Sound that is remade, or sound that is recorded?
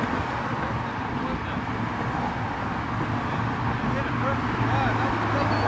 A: recorded